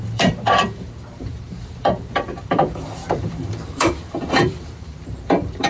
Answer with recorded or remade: remade